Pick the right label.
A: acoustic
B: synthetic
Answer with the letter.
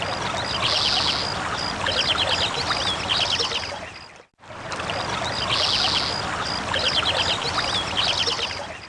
A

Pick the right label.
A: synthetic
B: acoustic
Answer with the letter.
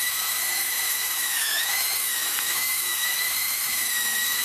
A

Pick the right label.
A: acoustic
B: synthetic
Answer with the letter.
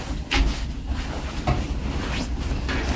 A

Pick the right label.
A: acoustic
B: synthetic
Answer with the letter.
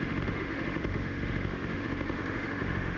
B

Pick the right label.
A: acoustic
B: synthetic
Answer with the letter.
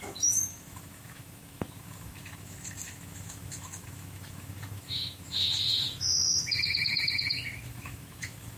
B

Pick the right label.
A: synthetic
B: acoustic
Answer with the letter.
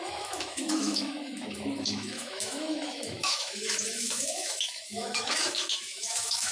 A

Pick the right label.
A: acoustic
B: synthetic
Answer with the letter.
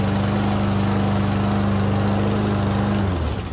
A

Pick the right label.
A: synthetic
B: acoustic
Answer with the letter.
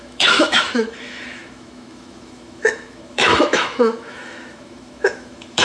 A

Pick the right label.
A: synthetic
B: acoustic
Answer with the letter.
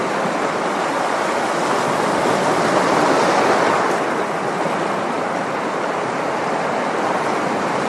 B